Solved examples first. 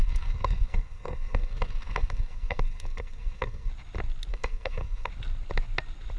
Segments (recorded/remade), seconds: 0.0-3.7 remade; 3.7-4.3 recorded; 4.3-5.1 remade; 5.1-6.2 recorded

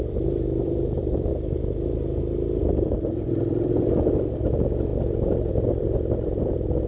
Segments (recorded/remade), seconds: 0.0-1.3 remade; 1.3-2.6 recorded; 2.6-6.9 remade